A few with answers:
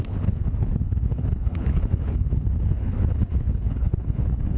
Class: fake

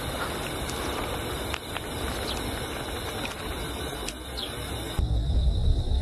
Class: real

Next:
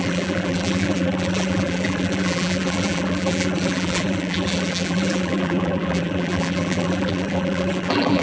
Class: fake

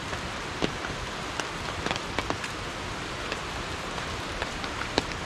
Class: real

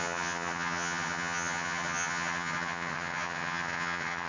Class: fake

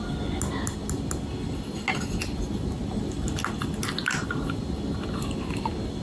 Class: real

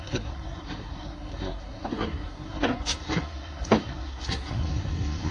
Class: fake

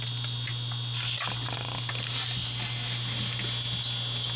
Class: real